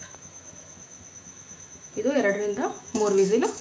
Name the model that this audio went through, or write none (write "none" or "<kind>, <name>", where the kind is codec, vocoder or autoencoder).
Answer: autoencoder, DAC-VAE